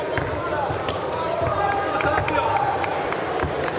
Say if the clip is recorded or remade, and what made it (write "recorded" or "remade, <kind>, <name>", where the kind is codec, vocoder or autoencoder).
recorded